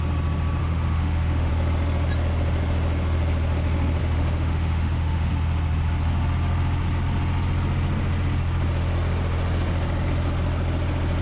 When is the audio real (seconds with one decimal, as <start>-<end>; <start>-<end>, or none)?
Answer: 0.0-0.6; 1.5-4.0; 5.3-11.2